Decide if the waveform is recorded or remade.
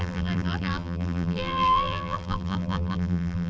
remade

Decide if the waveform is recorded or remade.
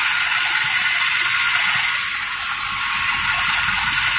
recorded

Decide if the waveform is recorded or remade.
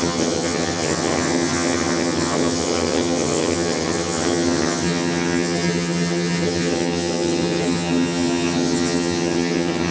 remade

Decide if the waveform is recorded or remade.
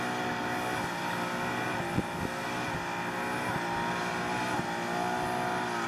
recorded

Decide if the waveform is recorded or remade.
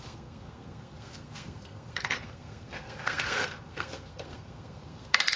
remade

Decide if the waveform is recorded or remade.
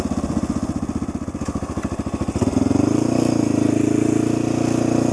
recorded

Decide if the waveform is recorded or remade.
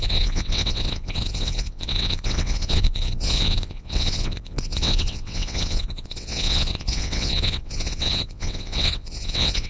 remade